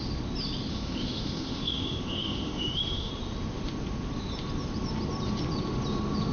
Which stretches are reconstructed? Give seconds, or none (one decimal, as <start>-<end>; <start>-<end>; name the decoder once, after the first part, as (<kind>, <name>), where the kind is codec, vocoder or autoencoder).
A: 0.7-3.1 (autoencoder, DAC-VAE)